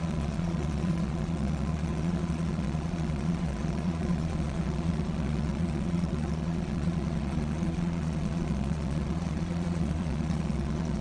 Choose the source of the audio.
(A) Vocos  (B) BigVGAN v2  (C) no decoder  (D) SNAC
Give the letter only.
A